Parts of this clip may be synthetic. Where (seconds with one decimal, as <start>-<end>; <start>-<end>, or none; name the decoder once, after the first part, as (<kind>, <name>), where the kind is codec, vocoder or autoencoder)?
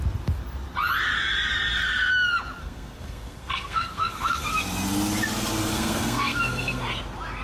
2.6-4.6 (codec, SNAC); 5.7-6.8